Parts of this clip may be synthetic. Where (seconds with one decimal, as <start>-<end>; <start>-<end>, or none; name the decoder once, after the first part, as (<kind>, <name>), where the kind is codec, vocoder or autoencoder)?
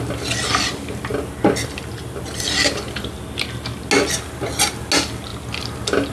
none